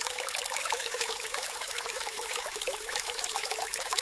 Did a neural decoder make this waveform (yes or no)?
yes